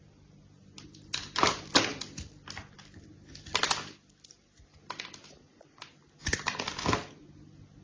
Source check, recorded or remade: recorded